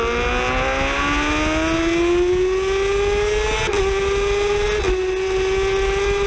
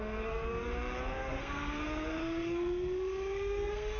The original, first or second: first